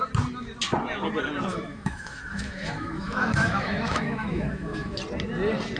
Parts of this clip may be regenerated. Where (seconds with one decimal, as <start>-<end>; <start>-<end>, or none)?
1.5-5.0